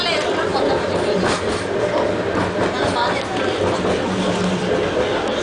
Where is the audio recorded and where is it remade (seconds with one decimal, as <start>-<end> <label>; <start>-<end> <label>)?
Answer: 0.0-5.4 recorded